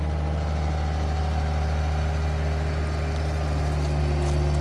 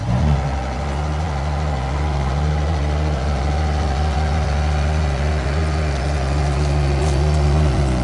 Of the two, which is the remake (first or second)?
second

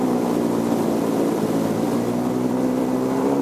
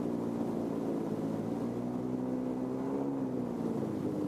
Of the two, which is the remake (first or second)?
first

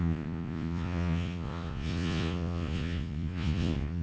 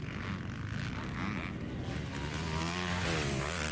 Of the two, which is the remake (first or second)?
first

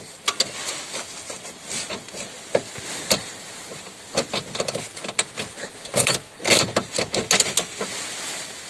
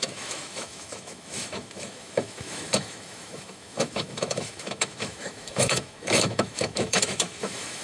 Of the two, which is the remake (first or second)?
second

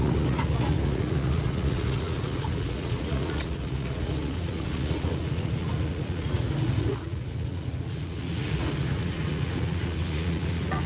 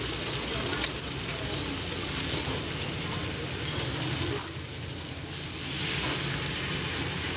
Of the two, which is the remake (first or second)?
first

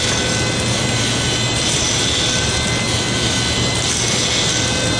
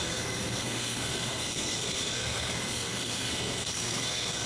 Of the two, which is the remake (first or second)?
second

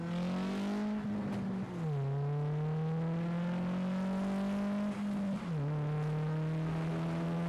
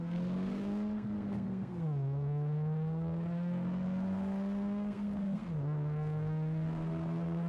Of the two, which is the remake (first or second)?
second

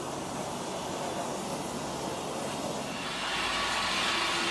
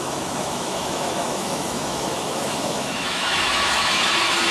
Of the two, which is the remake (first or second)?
second